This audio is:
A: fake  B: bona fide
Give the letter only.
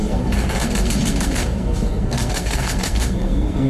A